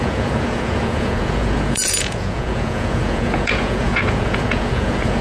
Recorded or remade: remade